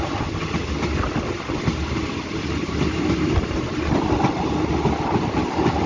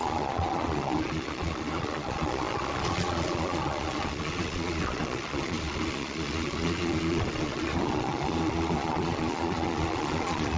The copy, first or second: second